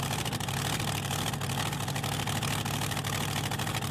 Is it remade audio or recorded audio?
recorded